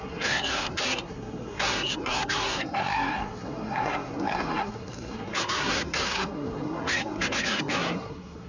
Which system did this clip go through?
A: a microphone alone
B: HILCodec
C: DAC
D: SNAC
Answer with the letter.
D